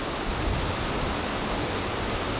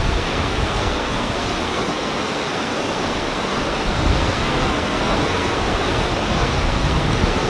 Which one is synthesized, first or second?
second